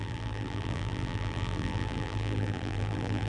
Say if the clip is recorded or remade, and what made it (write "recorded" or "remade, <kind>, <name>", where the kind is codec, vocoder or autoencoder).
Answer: remade, vocoder, BigVGAN v2